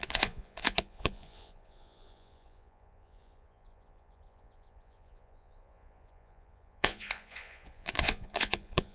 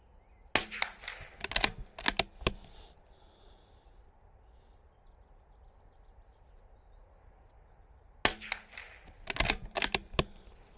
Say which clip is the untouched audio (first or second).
second